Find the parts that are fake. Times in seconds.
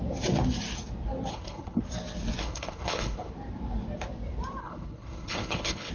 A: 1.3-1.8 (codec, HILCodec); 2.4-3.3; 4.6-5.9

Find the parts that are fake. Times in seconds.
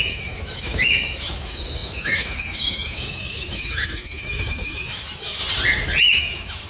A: 0.0-5.4 (autoencoder, DAC-VAE); 6.0-6.7